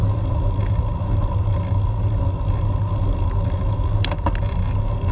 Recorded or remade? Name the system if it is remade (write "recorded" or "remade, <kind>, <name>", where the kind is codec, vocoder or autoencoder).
recorded